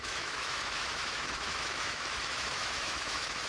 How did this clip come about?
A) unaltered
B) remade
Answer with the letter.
B